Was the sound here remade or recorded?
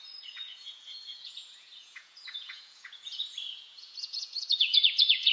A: remade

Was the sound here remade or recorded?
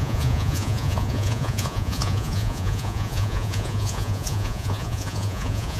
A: remade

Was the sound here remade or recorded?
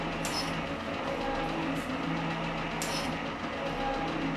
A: recorded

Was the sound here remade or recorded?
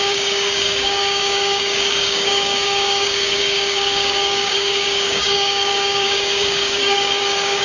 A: remade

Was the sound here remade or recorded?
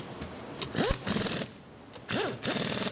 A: recorded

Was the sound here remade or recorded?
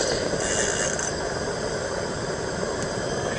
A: recorded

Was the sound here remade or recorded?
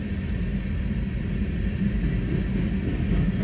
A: recorded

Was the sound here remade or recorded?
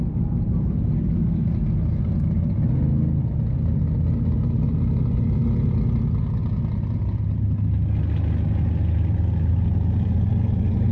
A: recorded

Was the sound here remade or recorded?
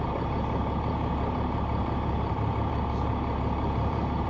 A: remade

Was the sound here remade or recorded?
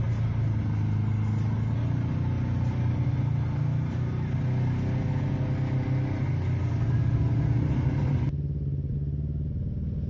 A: recorded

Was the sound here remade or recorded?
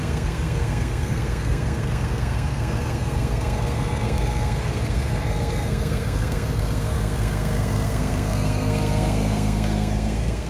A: remade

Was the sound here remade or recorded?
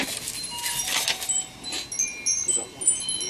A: recorded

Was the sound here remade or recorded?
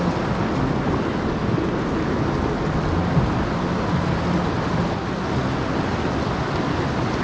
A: recorded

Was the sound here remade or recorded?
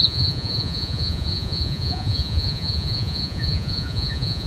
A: remade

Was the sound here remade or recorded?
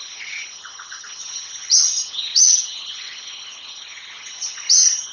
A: remade